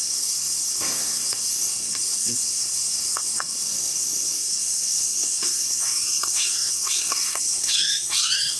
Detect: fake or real fake